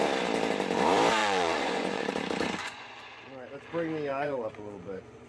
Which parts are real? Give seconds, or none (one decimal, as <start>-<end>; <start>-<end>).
0.0-1.2; 2.1-2.6; 3.2-4.1